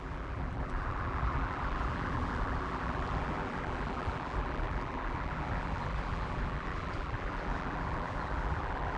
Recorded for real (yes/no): no